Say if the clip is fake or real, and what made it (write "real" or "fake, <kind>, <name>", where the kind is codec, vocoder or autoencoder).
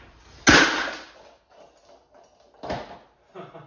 real